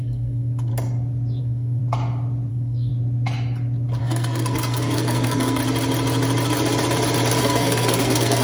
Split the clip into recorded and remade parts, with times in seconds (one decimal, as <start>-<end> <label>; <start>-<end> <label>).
0.0-0.7 remade; 0.7-1.4 recorded; 1.4-1.8 remade; 1.8-2.5 recorded; 2.5-2.9 remade; 2.9-4.0 recorded; 4.0-5.6 remade; 5.6-7.4 recorded; 7.4-8.4 remade